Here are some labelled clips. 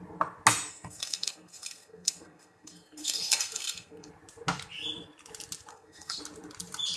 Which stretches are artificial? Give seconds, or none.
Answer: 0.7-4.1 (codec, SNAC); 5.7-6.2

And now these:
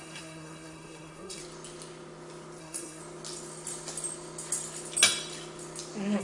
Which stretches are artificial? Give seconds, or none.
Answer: 0.0-1.4 (codec, SNAC); 2.6-3.0

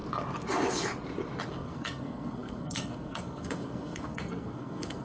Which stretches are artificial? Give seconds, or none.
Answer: 1.5-5.0 (codec, SNAC)

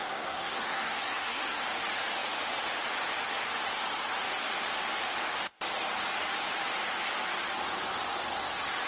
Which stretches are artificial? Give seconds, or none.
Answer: 0.0-1.6 (codec, SNAC)

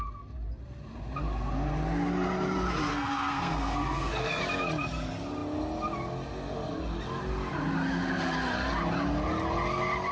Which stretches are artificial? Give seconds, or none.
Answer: 2.9-4.4 (codec, SNAC)

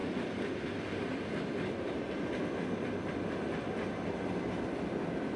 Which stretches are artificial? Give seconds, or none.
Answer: none

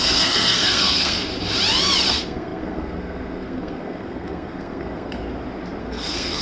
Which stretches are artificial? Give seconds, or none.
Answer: 0.0-1.3 (codec, SNAC); 2.1-5.2; 5.8-6.4